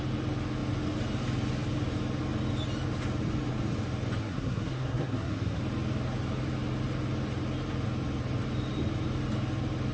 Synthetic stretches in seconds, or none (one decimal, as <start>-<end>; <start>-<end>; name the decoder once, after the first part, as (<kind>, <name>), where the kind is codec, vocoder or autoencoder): 4.2-5.6 (codec, SNAC)